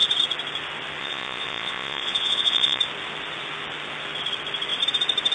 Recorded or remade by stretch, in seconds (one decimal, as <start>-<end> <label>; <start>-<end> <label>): 0.0-1.0 recorded; 1.0-2.8 remade; 2.8-5.3 recorded